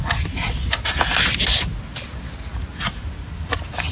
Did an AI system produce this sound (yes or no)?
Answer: no